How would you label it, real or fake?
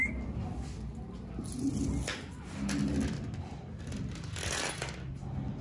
real